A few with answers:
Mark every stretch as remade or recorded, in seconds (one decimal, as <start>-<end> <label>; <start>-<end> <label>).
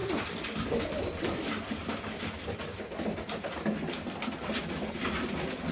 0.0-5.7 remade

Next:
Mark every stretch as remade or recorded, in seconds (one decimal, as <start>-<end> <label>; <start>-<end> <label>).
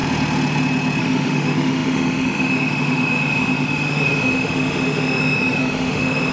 0.0-1.0 recorded; 1.0-6.3 remade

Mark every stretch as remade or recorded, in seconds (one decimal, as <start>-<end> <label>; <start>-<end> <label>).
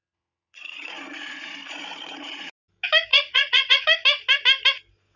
0.0-2.5 remade; 2.5-3.1 recorded; 3.1-3.8 remade; 3.8-5.2 recorded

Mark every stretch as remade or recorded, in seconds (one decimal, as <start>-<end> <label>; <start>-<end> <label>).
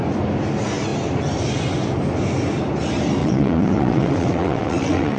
0.0-3.2 recorded; 3.2-5.2 remade